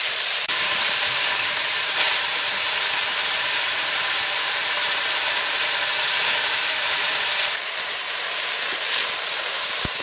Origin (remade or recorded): remade